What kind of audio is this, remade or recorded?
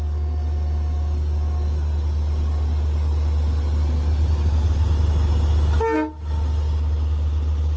recorded